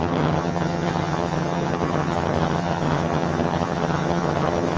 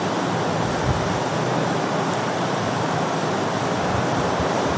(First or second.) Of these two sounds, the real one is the second